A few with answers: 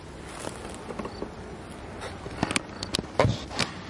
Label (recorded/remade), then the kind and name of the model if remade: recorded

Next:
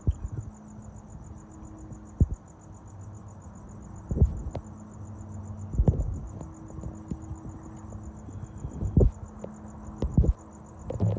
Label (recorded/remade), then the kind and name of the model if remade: recorded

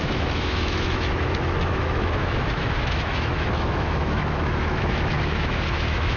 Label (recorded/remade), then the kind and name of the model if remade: remade, autoencoder, DAC-VAE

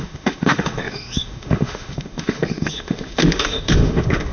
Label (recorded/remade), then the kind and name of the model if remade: remade, autoencoder, DAC-VAE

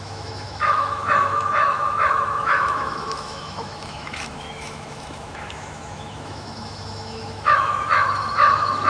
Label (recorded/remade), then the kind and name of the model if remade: remade, autoencoder, DAC-VAE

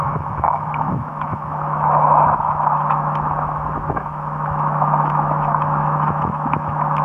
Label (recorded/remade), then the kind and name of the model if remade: remade, autoencoder, DAC-VAE